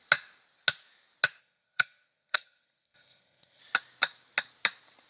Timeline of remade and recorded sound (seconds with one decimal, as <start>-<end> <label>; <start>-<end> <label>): 0.0-1.4 recorded; 1.4-3.6 remade; 3.6-5.1 recorded